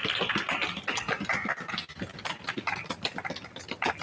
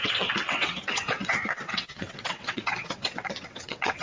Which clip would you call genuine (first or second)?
first